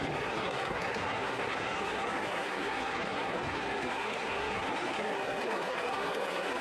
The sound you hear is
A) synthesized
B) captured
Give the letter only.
A